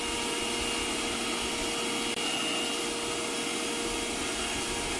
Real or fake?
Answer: real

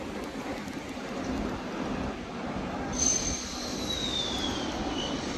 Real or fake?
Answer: real